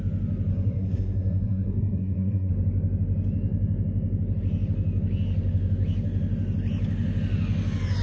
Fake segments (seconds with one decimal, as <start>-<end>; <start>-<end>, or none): 0.5-2.5